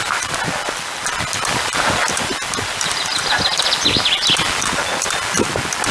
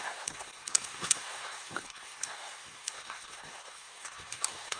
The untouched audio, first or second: first